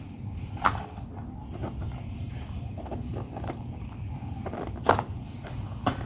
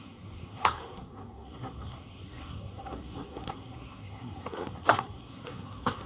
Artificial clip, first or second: second